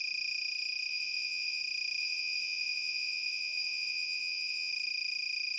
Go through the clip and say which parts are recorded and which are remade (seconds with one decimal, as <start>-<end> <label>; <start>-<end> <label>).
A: 0.0-0.9 recorded; 0.9-1.6 remade; 1.6-2.0 recorded; 2.0-4.7 remade; 4.7-5.6 recorded